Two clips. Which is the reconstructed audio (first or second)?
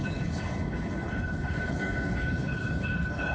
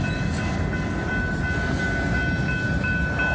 first